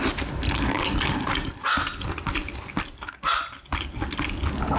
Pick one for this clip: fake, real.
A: real